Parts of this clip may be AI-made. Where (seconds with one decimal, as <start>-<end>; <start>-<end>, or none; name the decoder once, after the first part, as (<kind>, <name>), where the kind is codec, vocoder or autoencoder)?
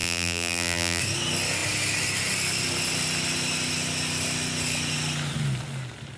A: 0.0-1.0 (vocoder, BigVGAN v2)